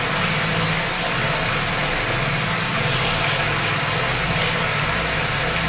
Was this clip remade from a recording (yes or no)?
no